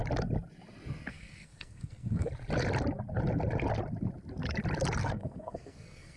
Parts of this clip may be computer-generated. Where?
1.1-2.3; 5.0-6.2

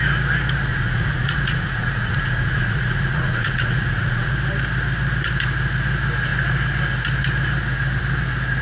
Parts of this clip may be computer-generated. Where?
0.7-4.3

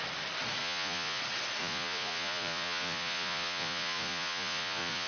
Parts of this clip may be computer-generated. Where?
0.6-1.2; 1.6-5.1

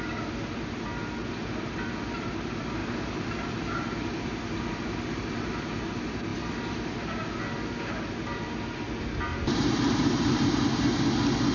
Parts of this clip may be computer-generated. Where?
9.3-10.5

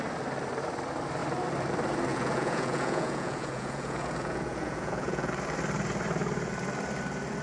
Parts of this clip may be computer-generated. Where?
2.1-5.3